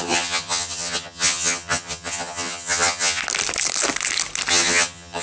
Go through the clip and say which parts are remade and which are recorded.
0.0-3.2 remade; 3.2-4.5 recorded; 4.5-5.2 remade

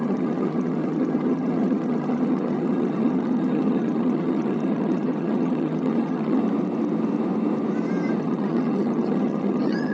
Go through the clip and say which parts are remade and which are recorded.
0.0-6.4 remade; 6.4-8.2 recorded; 8.2-9.9 remade

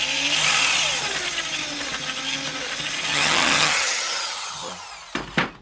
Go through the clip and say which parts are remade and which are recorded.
0.0-3.1 recorded; 3.1-4.7 remade; 4.7-5.6 recorded